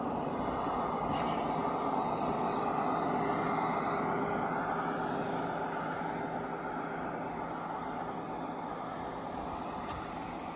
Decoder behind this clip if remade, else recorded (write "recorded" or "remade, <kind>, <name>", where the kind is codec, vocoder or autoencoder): recorded